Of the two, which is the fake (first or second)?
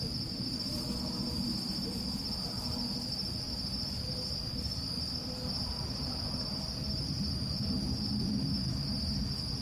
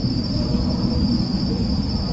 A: second